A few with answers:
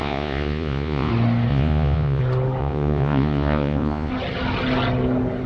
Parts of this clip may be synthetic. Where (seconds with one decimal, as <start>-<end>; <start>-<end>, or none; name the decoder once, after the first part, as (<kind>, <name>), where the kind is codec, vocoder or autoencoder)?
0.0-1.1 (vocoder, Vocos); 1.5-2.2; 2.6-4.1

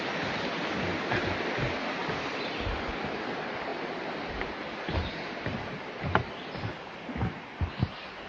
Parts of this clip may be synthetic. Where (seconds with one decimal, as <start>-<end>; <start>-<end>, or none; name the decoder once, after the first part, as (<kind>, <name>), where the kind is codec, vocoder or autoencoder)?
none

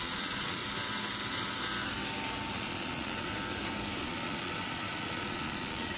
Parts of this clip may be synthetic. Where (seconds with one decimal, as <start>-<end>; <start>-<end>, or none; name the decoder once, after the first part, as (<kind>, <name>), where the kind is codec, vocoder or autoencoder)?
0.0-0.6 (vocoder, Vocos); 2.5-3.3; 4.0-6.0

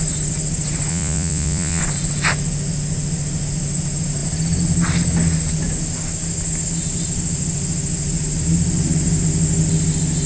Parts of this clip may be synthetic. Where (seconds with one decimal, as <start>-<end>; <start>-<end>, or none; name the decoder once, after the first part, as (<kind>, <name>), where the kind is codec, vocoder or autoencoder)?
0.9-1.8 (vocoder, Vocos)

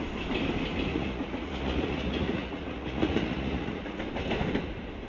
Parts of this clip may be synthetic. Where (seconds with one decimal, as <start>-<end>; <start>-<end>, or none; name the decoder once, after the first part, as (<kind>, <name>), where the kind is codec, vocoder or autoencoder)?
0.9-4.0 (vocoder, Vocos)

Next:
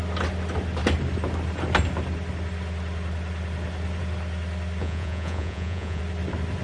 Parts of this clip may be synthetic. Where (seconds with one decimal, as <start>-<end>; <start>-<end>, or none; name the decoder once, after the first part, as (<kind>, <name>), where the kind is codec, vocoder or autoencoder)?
4.8-6.0 (vocoder, Vocos)

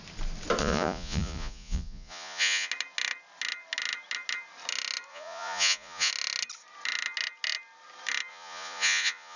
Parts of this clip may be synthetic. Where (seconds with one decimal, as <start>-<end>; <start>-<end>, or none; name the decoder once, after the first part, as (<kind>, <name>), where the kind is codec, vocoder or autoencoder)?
0.6-2.7 (vocoder, Vocos); 5.1-6.1; 8.3-9.4